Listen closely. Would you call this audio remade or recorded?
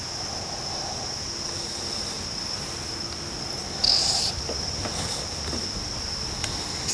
recorded